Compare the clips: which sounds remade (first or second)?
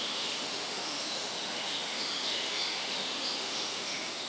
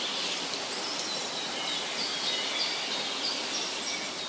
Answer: first